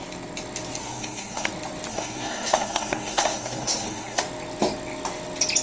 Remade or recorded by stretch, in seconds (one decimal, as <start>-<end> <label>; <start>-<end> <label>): 0.0-0.8 recorded; 0.8-1.5 remade; 1.5-1.9 recorded; 1.9-4.2 remade; 4.2-5.6 recorded

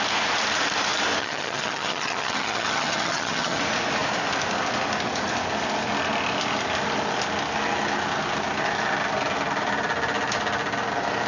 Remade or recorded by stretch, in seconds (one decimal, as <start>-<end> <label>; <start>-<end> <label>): 0.0-1.2 recorded; 1.2-3.6 remade; 3.6-11.3 recorded

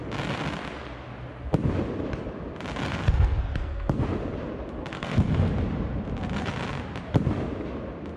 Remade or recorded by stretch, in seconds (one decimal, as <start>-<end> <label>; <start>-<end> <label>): 0.0-2.9 recorded; 2.9-4.0 remade; 4.0-4.9 recorded; 4.9-5.5 remade; 5.5-8.2 recorded

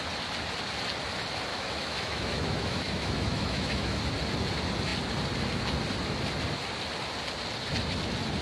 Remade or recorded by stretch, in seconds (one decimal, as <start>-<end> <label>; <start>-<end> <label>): 0.0-1.5 recorded; 1.5-4.0 remade; 4.0-8.4 recorded